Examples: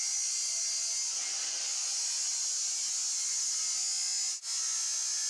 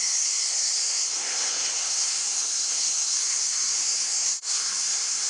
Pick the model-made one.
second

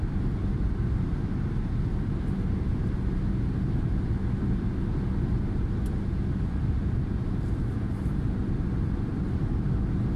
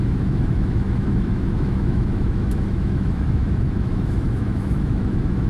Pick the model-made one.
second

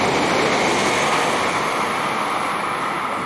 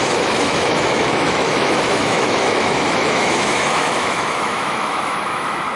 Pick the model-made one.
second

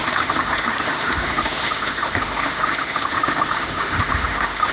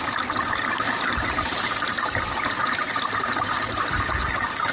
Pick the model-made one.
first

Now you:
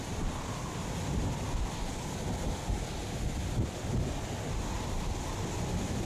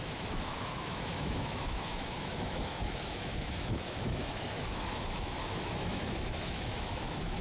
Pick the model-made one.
second